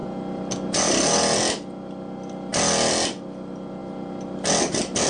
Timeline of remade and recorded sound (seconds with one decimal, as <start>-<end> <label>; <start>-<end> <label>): 0.0-5.1 recorded